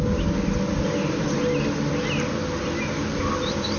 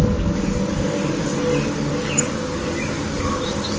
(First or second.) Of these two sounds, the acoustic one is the first